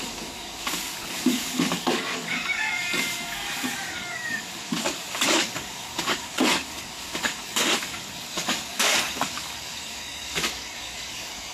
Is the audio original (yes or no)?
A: no